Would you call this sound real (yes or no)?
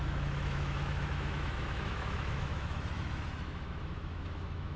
no